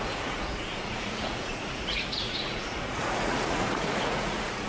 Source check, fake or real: fake